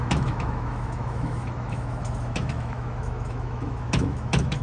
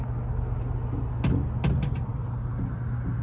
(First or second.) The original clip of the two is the second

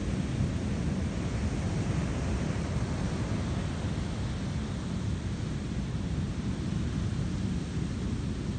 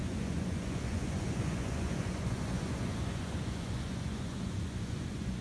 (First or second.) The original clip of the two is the first